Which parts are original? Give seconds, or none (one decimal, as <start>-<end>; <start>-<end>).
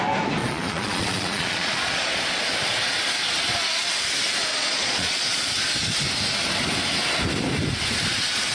0.0-0.4; 2.4-4.5; 5.6-8.5